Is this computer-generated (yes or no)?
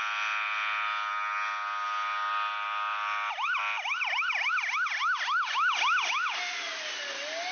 no